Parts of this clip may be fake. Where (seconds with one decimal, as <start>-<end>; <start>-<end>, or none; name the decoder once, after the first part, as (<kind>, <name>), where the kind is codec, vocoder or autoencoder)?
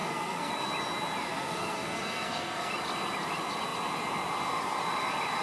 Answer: 0.0-0.5 (codec, SNAC); 1.3-2.7